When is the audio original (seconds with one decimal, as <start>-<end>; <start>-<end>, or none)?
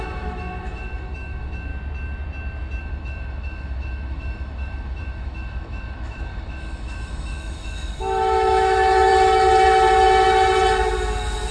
1.7-2.8; 9.1-11.5